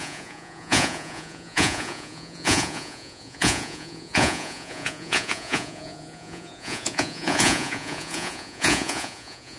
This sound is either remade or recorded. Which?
remade